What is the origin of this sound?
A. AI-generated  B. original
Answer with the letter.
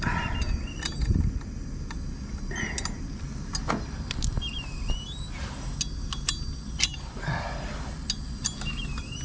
B